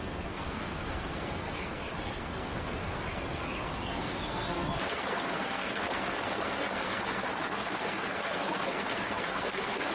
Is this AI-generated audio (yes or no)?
yes